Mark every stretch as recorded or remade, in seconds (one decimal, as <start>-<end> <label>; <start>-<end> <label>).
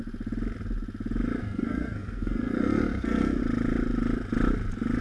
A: 0.0-1.4 recorded; 1.4-3.4 remade; 3.4-5.0 recorded